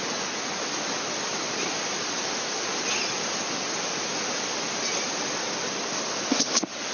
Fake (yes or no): no